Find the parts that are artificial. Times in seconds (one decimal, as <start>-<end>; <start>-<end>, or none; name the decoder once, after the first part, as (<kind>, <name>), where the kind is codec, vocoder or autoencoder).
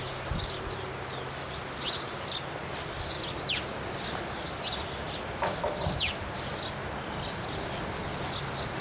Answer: none